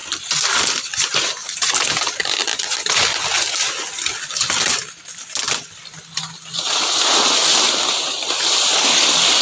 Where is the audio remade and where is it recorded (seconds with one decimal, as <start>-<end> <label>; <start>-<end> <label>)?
0.0-1.3 remade; 1.3-7.4 recorded; 7.4-9.4 remade